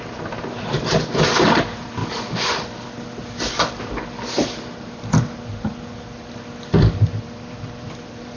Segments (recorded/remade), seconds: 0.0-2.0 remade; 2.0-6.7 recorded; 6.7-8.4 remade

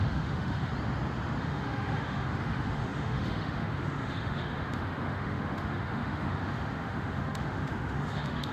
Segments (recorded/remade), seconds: 0.0-0.7 remade; 0.7-1.4 recorded; 1.4-8.5 remade

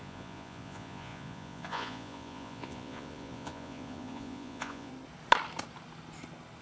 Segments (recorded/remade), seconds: 0.0-4.9 remade; 4.9-6.6 recorded

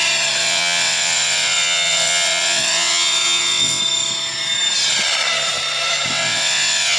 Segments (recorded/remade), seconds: 0.0-0.4 recorded; 0.4-3.8 remade; 3.8-6.1 recorded; 6.1-7.0 remade

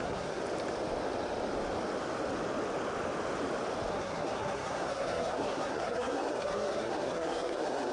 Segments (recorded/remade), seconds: 0.0-0.4 remade; 0.4-3.9 recorded; 3.9-7.9 remade

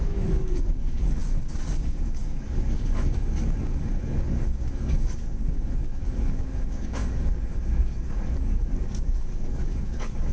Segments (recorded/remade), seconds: 0.0-1.2 remade; 1.2-1.8 recorded; 1.8-10.3 remade

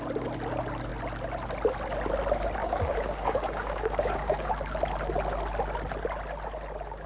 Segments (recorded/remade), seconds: 0.0-2.6 recorded; 2.6-4.5 remade; 4.5-7.1 recorded

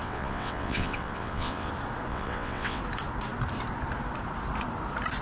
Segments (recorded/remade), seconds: 0.0-1.7 remade; 1.7-2.1 recorded; 2.1-2.8 remade; 2.8-5.2 recorded